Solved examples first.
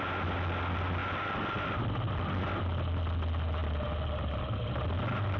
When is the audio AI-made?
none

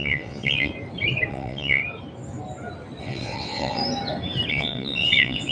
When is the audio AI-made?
0.0-0.7 (vocoder, WaveNeXt); 1.3-1.8; 3.0-3.8; 4.5-5.5

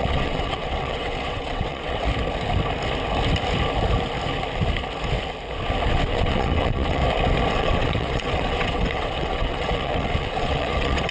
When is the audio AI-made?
0.0-2.1 (vocoder, WaveNeXt); 5.9-7.0; 7.5-11.1

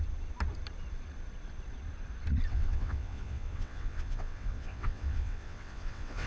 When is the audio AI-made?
2.5-6.3 (vocoder, WaveNeXt)